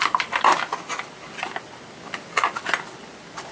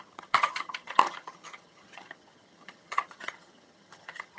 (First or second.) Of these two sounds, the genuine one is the first